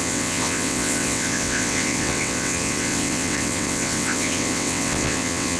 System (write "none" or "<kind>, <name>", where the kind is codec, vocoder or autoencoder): vocoder, WaveNeXt